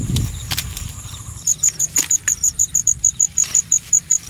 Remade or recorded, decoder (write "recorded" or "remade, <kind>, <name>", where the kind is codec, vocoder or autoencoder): remade, vocoder, BigVGAN v2